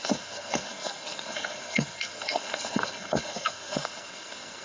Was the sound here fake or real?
fake